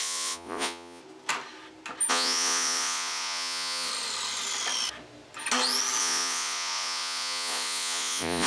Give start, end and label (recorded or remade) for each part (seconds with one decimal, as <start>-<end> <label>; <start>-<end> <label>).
0.0-1.0 remade; 1.0-2.1 recorded; 2.1-3.9 remade; 3.9-6.0 recorded; 6.0-8.5 remade